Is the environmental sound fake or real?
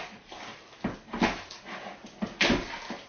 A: real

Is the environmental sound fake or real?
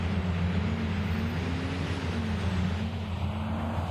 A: real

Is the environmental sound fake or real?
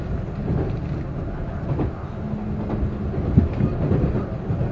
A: real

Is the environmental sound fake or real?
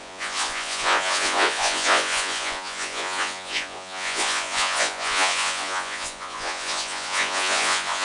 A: fake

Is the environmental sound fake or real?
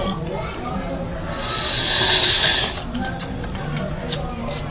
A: real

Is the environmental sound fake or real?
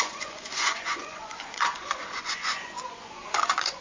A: fake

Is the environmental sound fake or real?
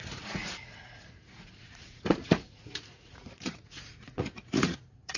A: fake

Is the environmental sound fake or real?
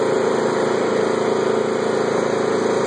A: real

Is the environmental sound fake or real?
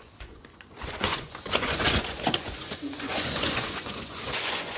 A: fake